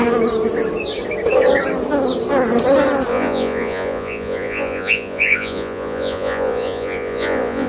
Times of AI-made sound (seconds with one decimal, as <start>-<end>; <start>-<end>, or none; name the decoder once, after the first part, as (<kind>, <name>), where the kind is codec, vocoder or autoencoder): 3.1-7.7 (vocoder, Vocos)